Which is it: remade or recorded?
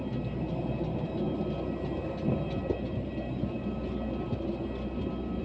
recorded